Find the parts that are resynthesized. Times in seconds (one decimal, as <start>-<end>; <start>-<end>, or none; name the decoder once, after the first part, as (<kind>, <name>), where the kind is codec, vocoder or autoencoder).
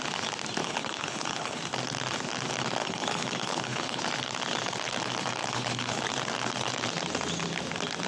0.6-1.6 (codec, HILCodec); 2.8-4.0; 5.4-6.0